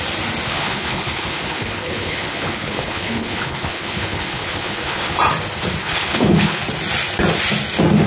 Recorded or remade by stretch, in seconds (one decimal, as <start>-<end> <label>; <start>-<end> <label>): 0.0-0.5 recorded; 0.5-5.2 remade; 5.2-5.8 recorded; 5.8-6.6 remade; 6.6-8.1 recorded